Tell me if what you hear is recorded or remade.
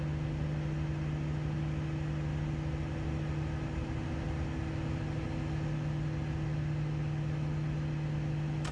recorded